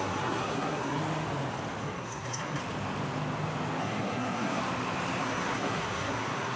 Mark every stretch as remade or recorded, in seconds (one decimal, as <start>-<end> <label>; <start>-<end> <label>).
0.0-1.0 remade; 1.0-1.8 recorded; 1.8-2.6 remade; 2.6-3.8 recorded; 3.8-4.6 remade; 4.6-5.2 recorded; 5.2-6.6 remade